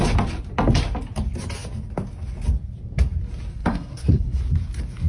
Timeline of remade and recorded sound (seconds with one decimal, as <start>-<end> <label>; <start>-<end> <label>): 0.0-3.6 recorded; 3.6-4.4 remade; 4.4-5.1 recorded